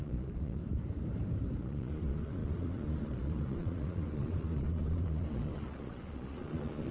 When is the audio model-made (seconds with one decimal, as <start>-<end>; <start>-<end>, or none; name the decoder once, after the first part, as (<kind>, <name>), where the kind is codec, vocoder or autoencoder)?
0.0-0.6 (vocoder, Vocos); 1.6-6.9